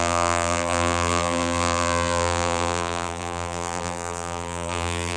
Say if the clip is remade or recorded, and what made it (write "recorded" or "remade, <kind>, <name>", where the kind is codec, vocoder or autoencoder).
remade, vocoder, BigVGAN v2